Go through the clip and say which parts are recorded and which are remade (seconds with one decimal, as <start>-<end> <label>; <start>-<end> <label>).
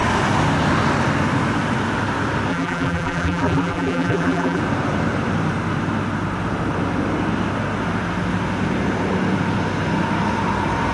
0.0-2.5 recorded; 2.5-4.6 remade; 4.6-10.9 recorded